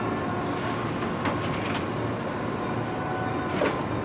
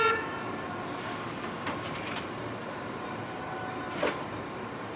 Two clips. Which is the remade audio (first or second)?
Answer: second